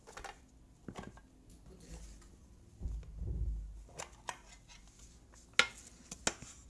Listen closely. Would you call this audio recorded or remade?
recorded